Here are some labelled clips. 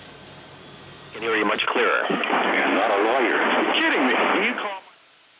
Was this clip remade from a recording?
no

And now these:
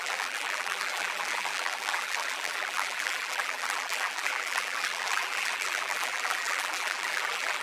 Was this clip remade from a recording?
yes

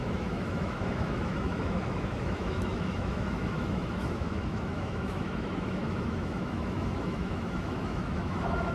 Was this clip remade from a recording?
yes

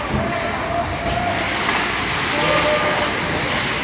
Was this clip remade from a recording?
no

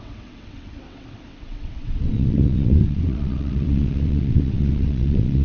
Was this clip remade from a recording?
yes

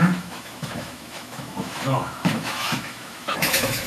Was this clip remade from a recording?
yes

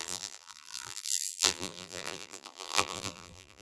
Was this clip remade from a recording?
yes